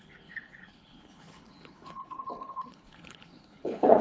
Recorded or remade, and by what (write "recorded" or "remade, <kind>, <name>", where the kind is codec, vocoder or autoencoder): remade, codec, HILCodec